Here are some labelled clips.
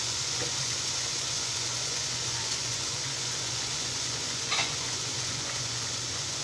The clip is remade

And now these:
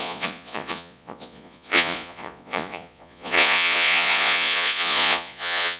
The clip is remade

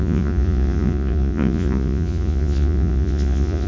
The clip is remade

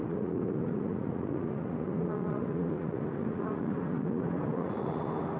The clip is remade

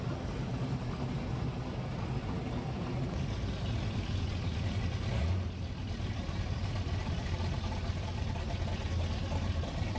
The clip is recorded